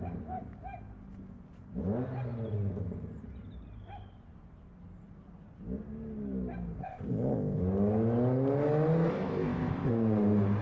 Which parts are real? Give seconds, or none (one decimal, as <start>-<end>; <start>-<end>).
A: 0.0-6.8; 7.6-9.1; 9.9-10.6